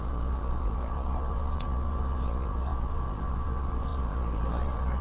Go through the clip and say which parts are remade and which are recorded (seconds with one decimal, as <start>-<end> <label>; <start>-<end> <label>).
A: 0.0-5.0 remade